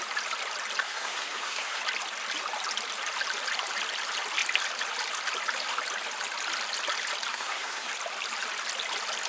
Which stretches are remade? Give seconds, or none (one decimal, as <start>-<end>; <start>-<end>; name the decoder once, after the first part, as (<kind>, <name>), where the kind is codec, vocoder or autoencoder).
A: 0.8-1.8 (codec, SNAC); 7.3-7.9